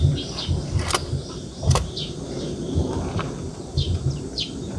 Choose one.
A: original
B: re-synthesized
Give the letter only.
B